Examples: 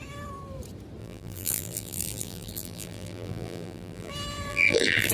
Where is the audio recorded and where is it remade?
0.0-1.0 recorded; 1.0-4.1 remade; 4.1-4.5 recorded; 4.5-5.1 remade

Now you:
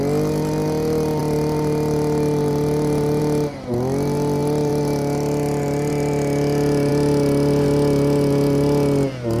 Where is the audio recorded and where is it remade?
0.0-9.4 recorded

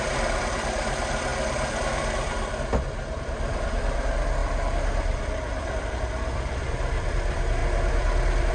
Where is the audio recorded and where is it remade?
0.0-8.5 remade

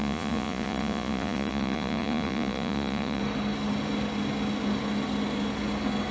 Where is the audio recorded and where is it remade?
0.0-3.2 remade; 3.2-6.1 recorded

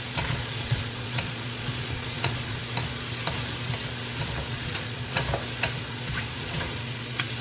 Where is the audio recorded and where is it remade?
0.0-2.6 remade; 2.6-4.5 recorded; 4.5-5.2 remade; 5.2-5.9 recorded; 5.9-7.4 remade